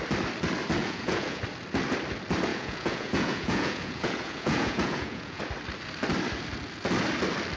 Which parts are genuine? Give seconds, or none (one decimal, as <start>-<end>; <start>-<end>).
0.0-0.8; 1.4-2.5; 5.4-7.6